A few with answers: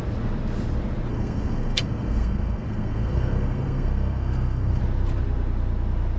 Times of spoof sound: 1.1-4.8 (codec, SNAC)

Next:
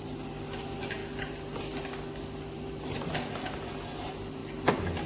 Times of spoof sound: none